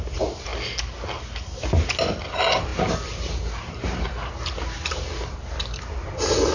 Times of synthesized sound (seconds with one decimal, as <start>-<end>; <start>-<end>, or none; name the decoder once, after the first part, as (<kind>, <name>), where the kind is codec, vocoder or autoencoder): 0.0-0.5 (vocoder, BigVGAN v2); 2.2-6.5